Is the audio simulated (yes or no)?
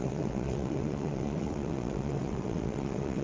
yes